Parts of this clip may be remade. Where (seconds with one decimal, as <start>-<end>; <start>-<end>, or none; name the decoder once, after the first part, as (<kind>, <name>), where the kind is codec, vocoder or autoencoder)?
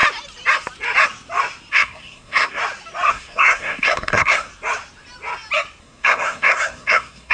1.7-2.6 (codec, SNAC); 3.1-4.5; 5.8-7.3